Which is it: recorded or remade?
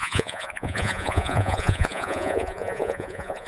remade